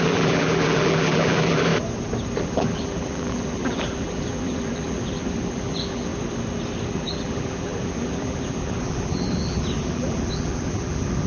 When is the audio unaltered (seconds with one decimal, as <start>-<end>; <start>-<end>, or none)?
1.7-2.4; 6.1-6.9